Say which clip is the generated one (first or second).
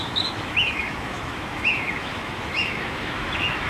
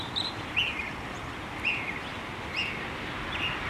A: first